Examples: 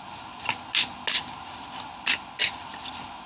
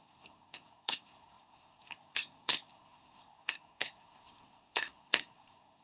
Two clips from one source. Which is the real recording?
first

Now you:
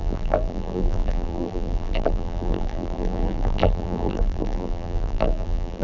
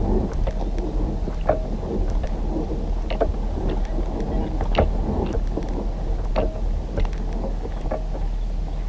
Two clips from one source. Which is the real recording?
second